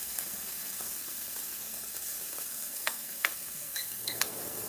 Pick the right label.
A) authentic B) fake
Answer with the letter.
B